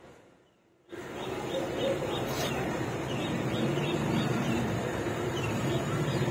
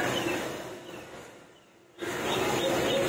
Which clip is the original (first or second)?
second